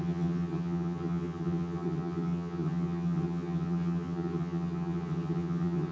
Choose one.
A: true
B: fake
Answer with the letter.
B